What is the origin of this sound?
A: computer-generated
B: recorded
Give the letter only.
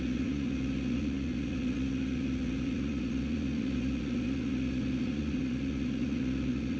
A